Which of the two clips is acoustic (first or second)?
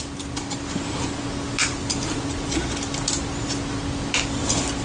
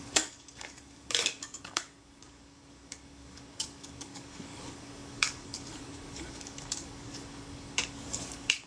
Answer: first